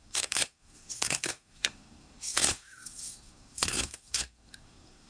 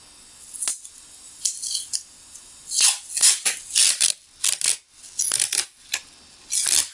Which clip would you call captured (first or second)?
second